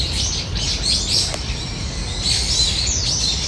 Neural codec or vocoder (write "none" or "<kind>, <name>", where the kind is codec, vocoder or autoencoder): none